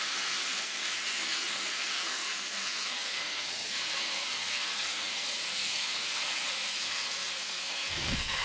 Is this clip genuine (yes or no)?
no